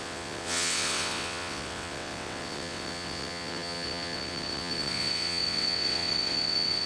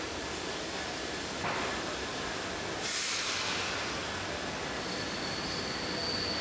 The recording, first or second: second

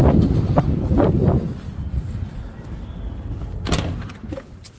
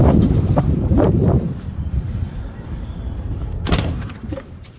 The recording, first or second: first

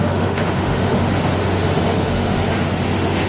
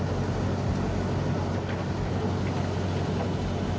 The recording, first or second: second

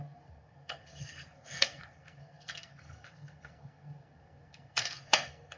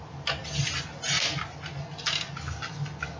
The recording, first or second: second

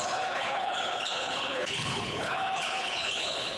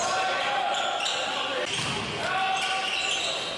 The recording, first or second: second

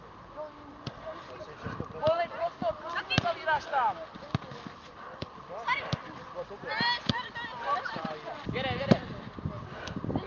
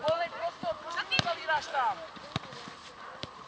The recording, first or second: first